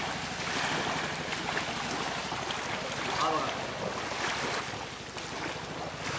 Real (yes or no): yes